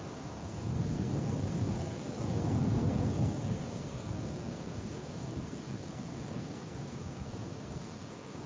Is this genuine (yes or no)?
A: no